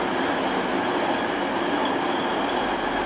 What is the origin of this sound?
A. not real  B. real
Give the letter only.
B